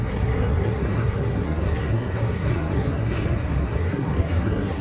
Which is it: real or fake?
fake